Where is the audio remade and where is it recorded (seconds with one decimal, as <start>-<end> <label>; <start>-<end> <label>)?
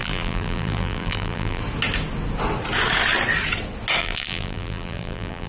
0.0-1.6 remade; 1.6-4.0 recorded; 4.0-5.5 remade